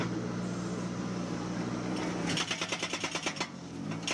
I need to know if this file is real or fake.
real